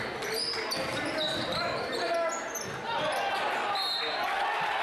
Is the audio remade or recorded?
recorded